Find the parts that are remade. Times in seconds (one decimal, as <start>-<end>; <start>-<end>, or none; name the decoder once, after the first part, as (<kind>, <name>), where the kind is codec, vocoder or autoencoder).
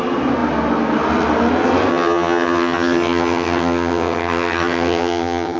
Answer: 1.9-5.6 (vocoder, HiFi-GAN)